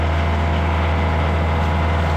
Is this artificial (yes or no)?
no